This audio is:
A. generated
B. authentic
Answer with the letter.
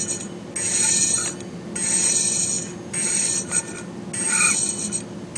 B